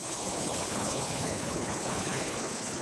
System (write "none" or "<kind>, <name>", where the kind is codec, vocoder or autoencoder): codec, HILCodec